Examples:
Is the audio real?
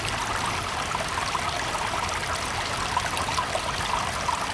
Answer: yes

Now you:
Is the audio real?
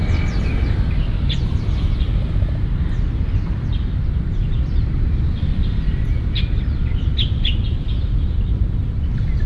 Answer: yes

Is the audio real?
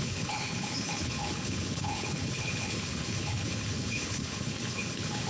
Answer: no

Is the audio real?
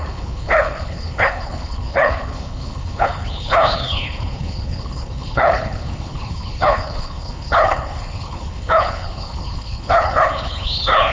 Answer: no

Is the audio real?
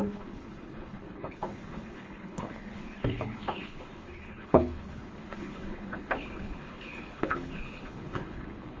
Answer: no